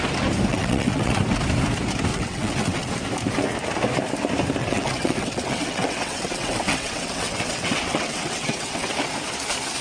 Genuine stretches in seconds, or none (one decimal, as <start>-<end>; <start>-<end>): 0.0-0.5; 1.2-2.1; 2.9-4.6; 8.9-9.8